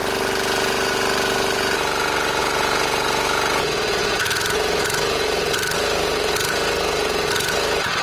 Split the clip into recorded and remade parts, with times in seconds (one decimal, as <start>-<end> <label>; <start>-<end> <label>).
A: 0.0-2.4 recorded; 2.4-8.0 remade